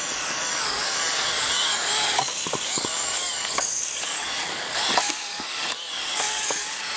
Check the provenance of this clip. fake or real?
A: fake